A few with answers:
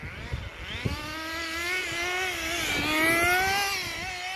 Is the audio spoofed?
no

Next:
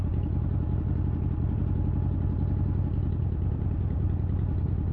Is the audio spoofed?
no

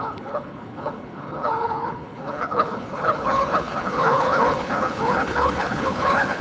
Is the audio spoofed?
yes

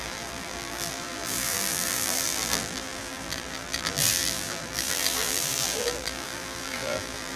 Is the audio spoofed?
yes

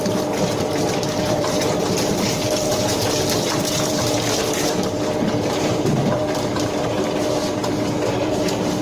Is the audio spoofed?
yes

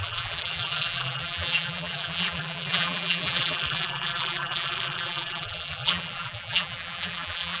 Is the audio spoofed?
yes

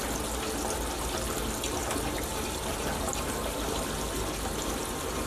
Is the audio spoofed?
no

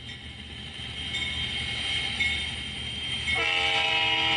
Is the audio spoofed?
no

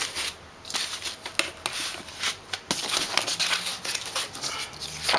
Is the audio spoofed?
no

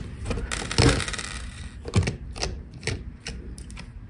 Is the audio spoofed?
no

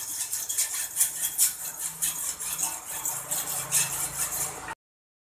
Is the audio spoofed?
no